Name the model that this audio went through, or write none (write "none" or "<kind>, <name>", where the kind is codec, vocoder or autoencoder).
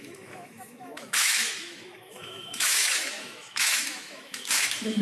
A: autoencoder, DAC-VAE